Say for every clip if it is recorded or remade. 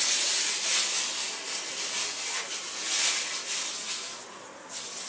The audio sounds recorded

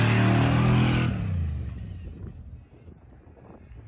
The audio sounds recorded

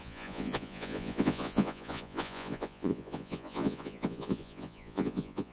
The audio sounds remade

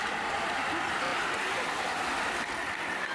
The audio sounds recorded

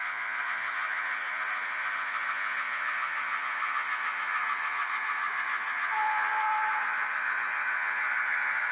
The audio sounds remade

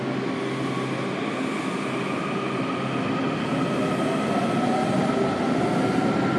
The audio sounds recorded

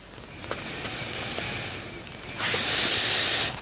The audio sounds recorded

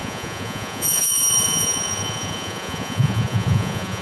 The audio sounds remade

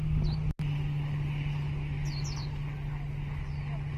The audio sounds recorded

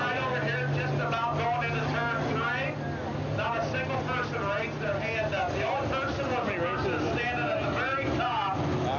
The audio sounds recorded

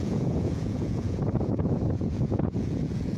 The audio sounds remade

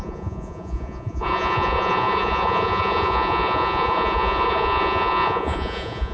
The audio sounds remade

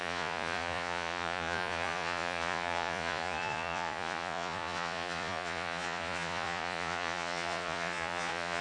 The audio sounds remade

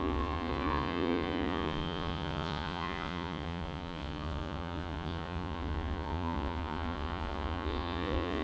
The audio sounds remade